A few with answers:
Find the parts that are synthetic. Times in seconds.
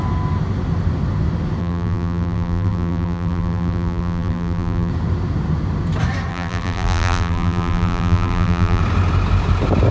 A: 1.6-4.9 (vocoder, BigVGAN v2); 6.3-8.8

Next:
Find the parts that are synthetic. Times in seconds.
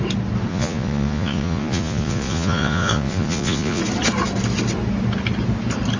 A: 0.5-3.8 (vocoder, Vocos)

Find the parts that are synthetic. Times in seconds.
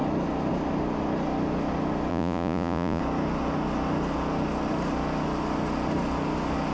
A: 2.1-3.0 (vocoder, Vocos)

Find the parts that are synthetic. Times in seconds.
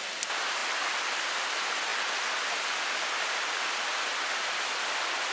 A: none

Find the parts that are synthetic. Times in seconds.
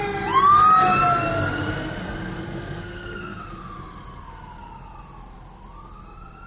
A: 2.0-3.4 (codec, SNAC)